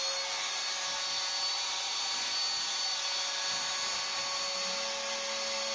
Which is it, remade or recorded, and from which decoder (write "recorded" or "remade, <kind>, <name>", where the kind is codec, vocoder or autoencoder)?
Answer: recorded